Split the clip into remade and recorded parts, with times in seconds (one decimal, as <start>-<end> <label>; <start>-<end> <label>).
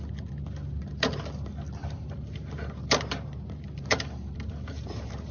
0.0-1.8 recorded; 1.8-5.3 remade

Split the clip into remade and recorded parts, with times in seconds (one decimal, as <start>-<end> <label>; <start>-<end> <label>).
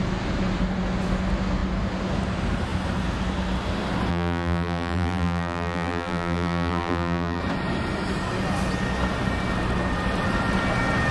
0.0-4.1 recorded; 4.1-7.4 remade; 7.4-11.1 recorded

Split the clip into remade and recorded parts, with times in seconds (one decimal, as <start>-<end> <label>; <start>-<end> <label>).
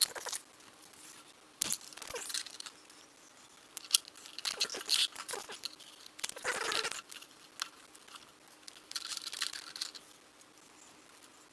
0.0-11.5 recorded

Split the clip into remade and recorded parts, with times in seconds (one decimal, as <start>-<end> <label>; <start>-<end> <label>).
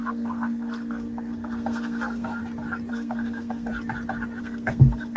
0.0-2.4 remade; 2.4-2.9 recorded; 2.9-3.7 remade; 3.7-4.4 recorded; 4.4-5.2 remade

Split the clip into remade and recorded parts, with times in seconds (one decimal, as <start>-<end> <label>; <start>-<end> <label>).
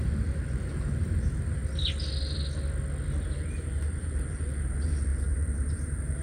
0.0-1.6 remade; 1.6-3.2 recorded; 3.2-6.2 remade